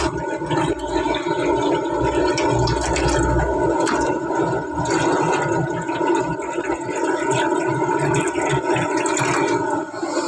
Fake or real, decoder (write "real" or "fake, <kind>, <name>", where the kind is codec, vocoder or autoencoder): real